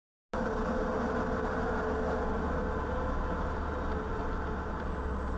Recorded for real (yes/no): yes